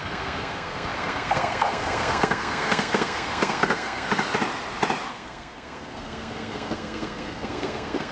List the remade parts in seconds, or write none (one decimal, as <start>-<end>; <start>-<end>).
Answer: 0.0-4.1; 5.1-8.1